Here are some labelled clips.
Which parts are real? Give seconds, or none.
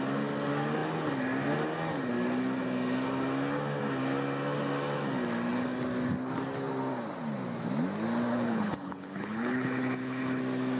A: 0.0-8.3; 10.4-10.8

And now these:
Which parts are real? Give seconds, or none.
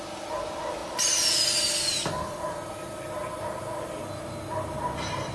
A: 0.0-5.3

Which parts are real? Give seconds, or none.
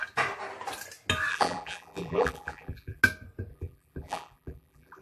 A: 0.0-1.3; 3.0-3.5